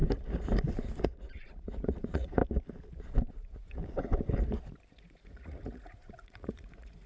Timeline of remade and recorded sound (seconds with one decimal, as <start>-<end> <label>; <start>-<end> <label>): 0.0-1.0 recorded; 1.0-2.4 remade; 2.4-3.3 recorded; 3.3-3.8 remade; 3.8-4.9 recorded; 4.9-7.1 remade